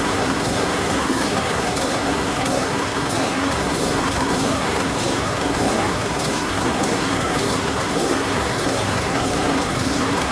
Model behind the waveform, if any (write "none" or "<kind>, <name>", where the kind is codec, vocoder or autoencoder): codec, SNAC